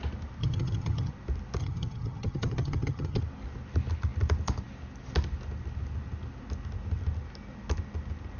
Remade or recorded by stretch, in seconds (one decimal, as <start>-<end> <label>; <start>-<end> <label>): 0.0-0.4 recorded; 0.4-1.1 remade; 1.1-1.6 recorded; 1.6-3.2 remade; 3.2-8.4 recorded